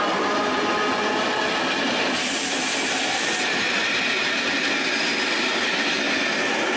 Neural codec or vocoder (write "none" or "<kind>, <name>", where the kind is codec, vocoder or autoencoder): none